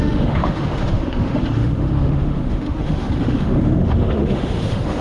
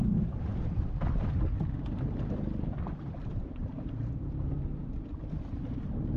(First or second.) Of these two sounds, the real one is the second